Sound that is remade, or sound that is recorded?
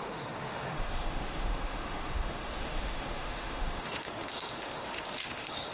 remade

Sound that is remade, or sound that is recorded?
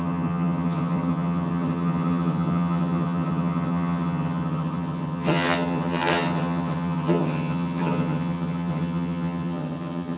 remade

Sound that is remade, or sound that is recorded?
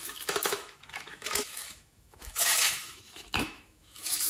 remade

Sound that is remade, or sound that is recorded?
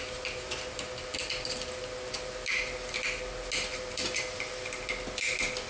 recorded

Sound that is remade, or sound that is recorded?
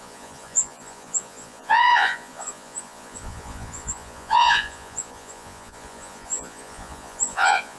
remade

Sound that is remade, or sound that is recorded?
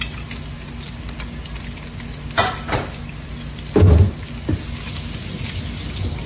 recorded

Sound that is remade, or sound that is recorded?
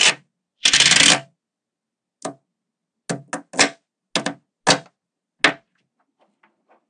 recorded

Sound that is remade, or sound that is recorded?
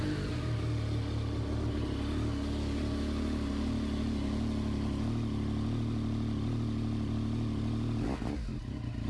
recorded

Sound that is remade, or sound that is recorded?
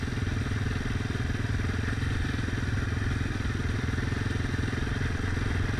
recorded